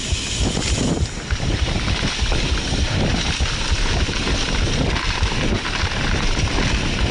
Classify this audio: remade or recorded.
recorded